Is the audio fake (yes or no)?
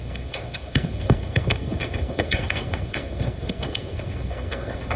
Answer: yes